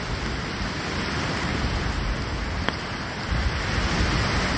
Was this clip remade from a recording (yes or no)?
no